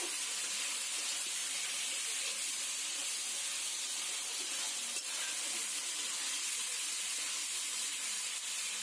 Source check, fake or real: real